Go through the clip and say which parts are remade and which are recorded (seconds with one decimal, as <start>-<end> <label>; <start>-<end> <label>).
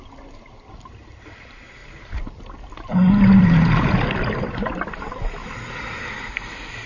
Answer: 0.0-2.9 recorded; 2.9-4.5 remade; 4.5-6.9 recorded